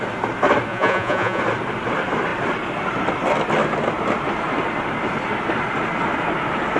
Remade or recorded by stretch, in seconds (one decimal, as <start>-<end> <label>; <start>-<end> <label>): 0.0-0.7 recorded; 0.7-1.4 remade; 1.4-6.8 recorded